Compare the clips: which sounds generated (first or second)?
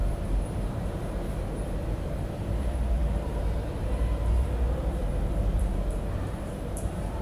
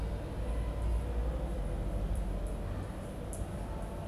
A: first